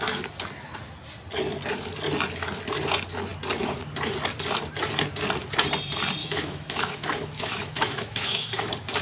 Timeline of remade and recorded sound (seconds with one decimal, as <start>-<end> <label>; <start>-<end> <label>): 0.0-6.2 recorded; 6.2-8.6 remade; 8.6-9.0 recorded